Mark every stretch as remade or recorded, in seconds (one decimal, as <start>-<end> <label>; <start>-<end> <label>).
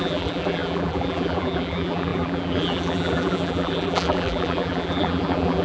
0.0-5.6 remade